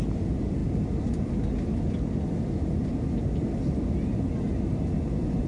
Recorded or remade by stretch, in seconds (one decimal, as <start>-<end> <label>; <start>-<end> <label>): 0.0-5.5 recorded